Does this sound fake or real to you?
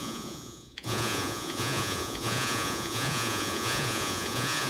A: fake